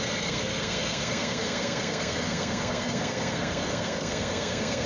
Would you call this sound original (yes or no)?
no